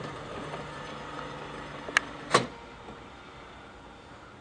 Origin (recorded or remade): recorded